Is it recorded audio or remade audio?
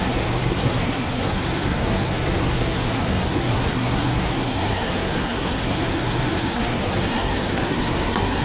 remade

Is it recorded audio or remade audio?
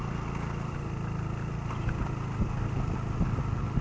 recorded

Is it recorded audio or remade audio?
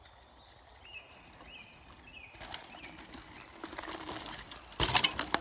recorded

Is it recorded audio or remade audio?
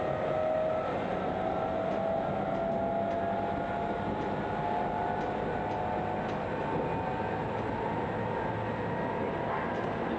recorded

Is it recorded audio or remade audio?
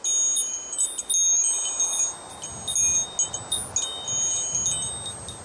recorded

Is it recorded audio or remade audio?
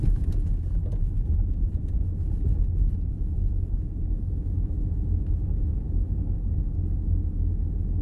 recorded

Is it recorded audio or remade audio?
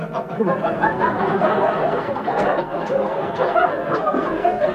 remade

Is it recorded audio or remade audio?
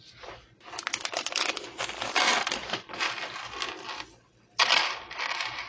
recorded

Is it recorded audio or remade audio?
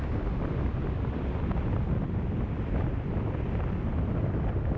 recorded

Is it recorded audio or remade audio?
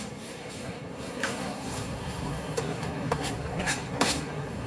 remade